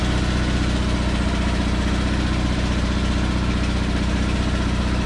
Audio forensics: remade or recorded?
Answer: recorded